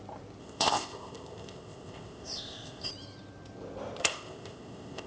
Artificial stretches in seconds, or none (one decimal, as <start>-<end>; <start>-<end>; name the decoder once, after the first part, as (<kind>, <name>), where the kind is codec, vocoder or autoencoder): 0.4-2.9 (codec, ZipCodec); 4.0-5.1